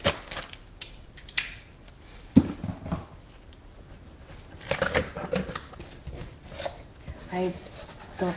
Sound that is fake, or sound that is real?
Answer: real